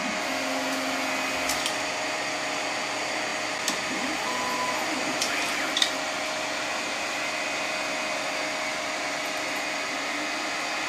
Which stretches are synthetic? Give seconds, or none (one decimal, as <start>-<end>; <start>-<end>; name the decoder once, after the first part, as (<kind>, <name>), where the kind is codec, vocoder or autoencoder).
none